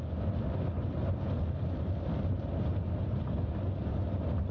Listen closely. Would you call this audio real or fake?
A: real